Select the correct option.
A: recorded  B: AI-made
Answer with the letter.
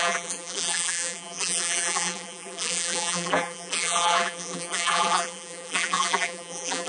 B